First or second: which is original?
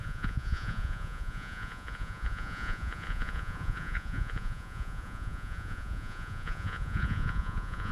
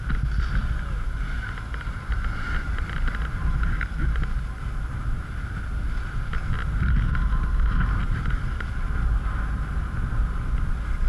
second